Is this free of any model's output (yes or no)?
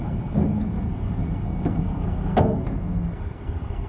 no